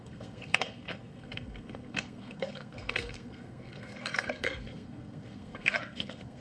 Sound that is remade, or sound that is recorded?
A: remade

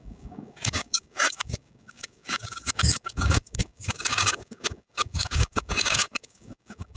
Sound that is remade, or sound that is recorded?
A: remade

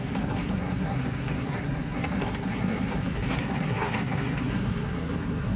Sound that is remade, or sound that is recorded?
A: remade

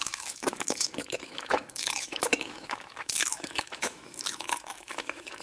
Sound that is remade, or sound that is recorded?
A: remade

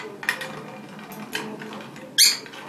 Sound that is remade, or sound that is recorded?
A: recorded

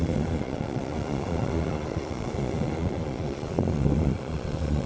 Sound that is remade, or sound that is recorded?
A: remade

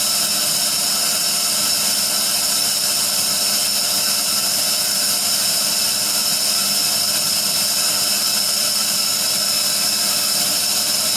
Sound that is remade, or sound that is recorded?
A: recorded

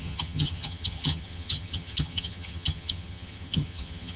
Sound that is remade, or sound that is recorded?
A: remade